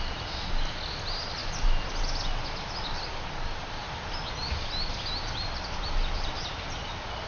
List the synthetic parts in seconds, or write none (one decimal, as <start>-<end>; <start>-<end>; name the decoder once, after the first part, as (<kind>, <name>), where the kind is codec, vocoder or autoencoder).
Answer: none